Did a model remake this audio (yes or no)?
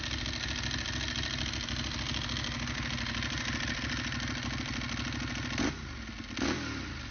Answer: no